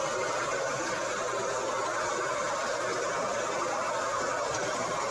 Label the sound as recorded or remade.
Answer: recorded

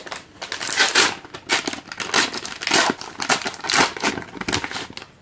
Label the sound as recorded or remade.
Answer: recorded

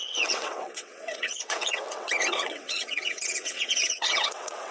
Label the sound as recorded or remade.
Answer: remade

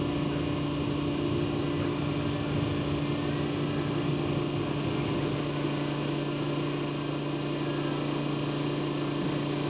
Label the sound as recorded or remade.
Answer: recorded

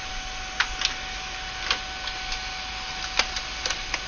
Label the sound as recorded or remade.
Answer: recorded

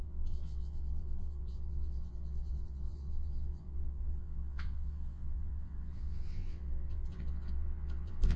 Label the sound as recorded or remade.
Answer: remade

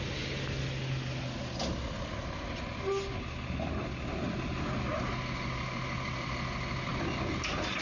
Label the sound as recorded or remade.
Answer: recorded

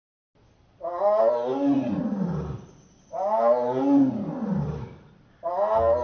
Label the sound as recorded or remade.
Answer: recorded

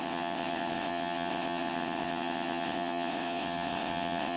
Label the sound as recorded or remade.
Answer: remade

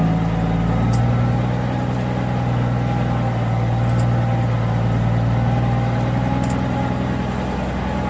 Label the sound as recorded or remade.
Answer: recorded